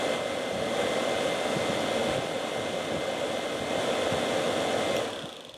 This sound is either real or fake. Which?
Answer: real